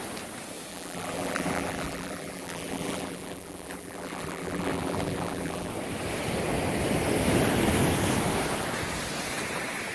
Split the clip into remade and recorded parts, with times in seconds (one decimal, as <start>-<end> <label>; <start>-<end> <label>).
0.0-0.7 recorded; 0.7-5.7 remade; 5.7-9.9 recorded